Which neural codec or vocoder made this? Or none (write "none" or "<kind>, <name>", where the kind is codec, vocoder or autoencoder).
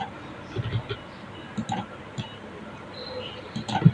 none